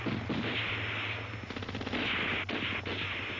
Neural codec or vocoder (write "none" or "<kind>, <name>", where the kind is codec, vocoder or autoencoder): none